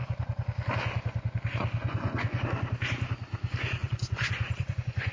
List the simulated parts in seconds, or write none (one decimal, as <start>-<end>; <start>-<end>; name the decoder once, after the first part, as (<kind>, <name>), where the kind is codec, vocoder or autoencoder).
1.8-2.4 (vocoder, Vocos); 3.8-5.1